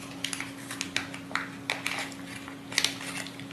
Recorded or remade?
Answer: recorded